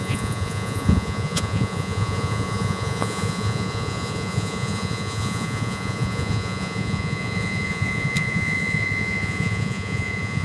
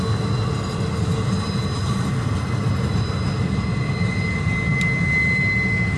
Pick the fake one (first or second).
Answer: first